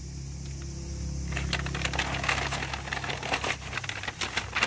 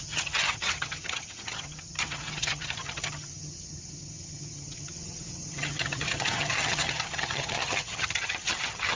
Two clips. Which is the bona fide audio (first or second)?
first